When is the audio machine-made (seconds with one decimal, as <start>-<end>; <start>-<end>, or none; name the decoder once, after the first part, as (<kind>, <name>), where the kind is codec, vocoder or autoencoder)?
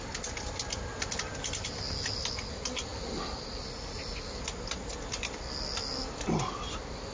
none